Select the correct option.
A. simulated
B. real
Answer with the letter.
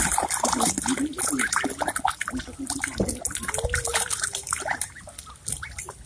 B